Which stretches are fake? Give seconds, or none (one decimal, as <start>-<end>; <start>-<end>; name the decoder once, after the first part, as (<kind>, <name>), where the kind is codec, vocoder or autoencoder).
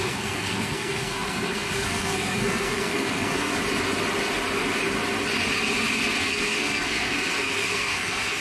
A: 0.0-3.5 (codec, SNAC); 6.2-8.4